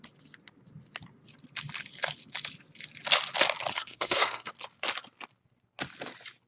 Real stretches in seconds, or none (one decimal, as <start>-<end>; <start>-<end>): 0.0-3.7; 4.5-6.5